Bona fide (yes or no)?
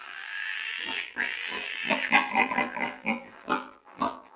no